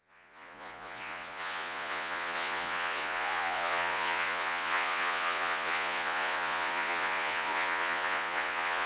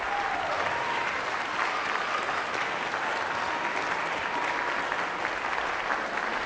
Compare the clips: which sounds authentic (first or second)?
second